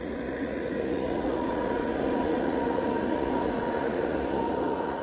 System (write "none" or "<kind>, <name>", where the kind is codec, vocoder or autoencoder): vocoder, Vocos